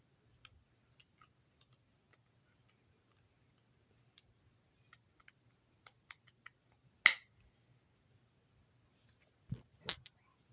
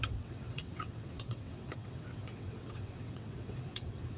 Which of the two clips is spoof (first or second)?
second